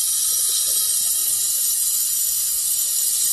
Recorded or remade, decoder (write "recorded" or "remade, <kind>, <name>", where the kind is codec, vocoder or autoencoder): recorded